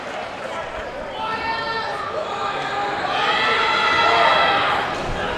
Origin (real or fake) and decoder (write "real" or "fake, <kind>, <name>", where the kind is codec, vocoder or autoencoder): real